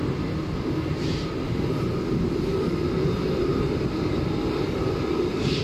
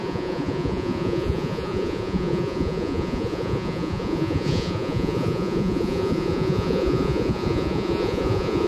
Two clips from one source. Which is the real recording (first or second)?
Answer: first